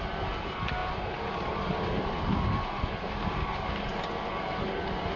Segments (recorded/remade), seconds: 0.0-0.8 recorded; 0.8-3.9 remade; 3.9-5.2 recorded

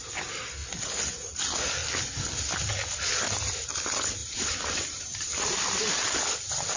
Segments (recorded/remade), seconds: 0.0-4.2 recorded; 4.2-6.2 remade; 6.2-6.8 recorded

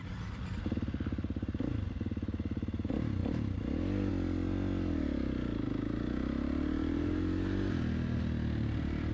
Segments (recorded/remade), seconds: 0.0-9.1 recorded

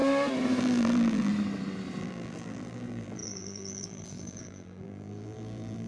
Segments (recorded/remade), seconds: 0.0-0.6 recorded; 0.6-1.3 remade; 1.3-2.0 recorded; 2.0-5.9 remade

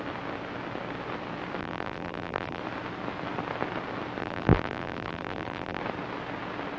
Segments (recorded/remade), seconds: 0.0-1.6 recorded; 1.6-2.6 remade; 2.6-4.2 recorded; 4.2-5.8 remade; 5.8-6.8 recorded

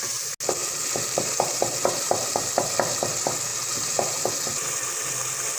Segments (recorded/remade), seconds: 0.0-0.6 recorded; 0.6-2.7 remade; 2.7-5.6 recorded

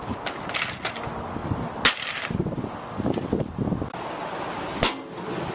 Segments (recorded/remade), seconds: 0.0-1.4 recorded; 1.4-3.9 remade; 3.9-5.5 recorded

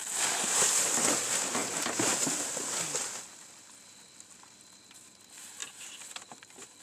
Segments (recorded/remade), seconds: 0.0-5.6 recorded; 5.6-6.8 remade